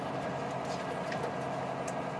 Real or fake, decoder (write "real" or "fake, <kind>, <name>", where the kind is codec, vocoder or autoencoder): real